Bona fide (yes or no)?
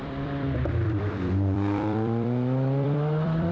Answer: no